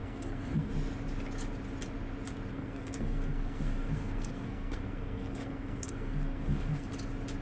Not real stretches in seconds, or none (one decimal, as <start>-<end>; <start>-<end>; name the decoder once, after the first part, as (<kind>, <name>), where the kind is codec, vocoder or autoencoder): 0.0-0.7 (codec, SNAC); 2.5-6.9